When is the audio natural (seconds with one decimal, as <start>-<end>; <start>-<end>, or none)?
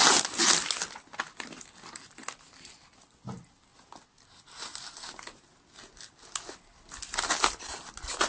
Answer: 0.0-8.3